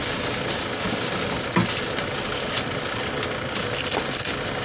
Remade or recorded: recorded